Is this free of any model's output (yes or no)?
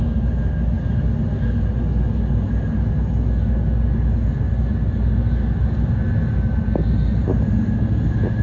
yes